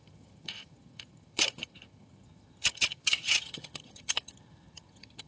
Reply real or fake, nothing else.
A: fake